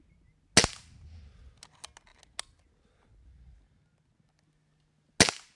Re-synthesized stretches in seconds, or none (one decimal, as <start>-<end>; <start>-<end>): none